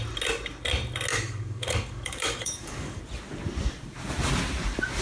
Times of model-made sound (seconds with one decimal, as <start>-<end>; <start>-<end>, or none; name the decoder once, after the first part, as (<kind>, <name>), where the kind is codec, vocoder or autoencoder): 1.1-3.0 (codec, DAC)